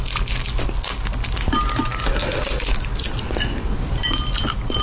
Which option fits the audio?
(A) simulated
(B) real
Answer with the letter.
B